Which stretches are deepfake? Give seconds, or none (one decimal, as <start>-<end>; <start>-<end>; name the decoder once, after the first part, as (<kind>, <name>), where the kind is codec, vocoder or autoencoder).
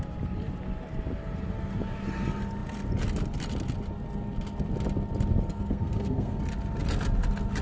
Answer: 5.5-6.4 (codec, SNAC)